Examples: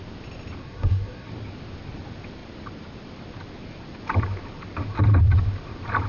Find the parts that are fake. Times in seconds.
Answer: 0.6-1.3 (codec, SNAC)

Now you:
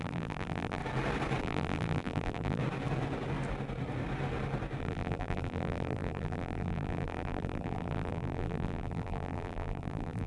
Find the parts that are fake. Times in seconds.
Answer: 0.0-0.8 (vocoder, BigVGAN v2); 1.4-2.6; 4.8-10.3

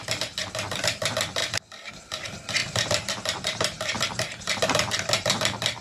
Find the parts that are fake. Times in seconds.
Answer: 1.4-1.9 (vocoder, BigVGAN v2); 2.6-4.9